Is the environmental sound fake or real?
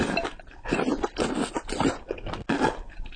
real